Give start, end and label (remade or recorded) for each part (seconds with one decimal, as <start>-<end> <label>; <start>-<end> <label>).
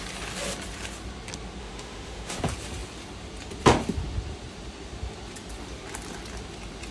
0.0-1.6 recorded; 1.6-2.4 remade; 2.4-6.9 recorded